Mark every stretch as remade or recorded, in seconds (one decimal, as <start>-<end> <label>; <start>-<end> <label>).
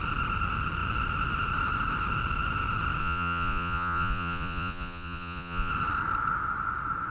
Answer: 0.0-3.0 recorded; 3.0-5.7 remade; 5.7-7.1 recorded